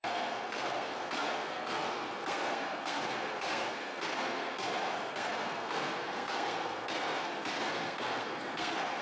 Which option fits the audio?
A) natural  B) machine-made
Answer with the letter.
B